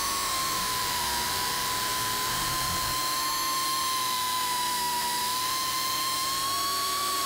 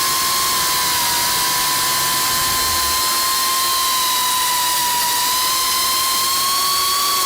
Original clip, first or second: second